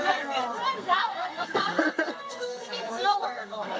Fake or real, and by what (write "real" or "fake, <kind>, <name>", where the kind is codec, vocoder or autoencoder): fake, codec, SNAC